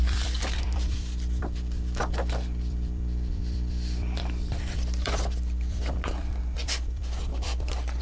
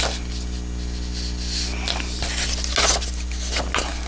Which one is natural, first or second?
second